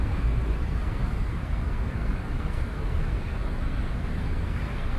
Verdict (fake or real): fake